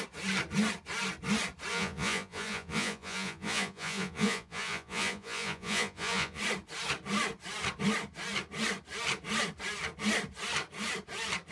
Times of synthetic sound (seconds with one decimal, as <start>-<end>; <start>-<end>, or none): 1.7-6.4